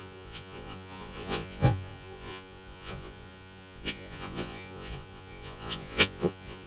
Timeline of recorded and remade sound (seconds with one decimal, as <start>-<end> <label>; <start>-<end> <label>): 0.0-6.7 remade